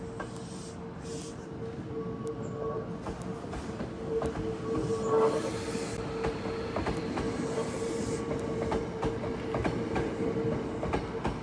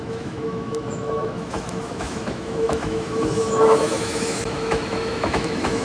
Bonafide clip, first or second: first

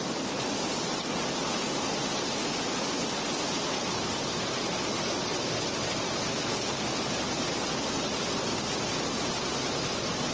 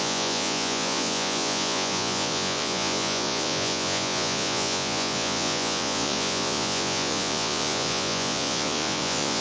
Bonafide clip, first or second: first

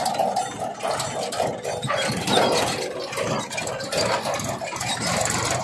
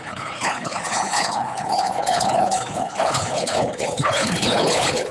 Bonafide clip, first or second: first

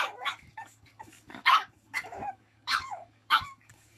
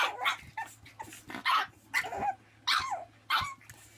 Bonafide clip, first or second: second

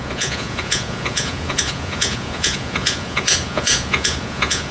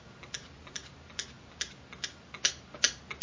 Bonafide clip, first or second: second